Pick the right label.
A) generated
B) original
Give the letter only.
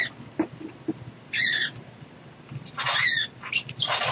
B